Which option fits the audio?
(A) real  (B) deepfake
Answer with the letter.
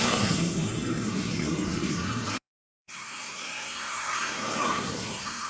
B